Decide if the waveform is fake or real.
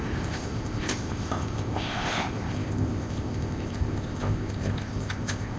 fake